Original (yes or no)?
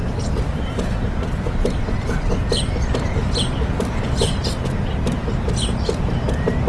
yes